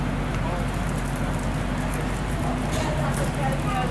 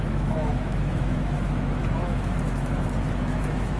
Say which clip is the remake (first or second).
second